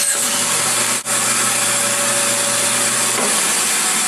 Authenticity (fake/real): real